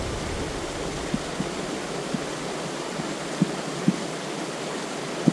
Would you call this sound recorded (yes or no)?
yes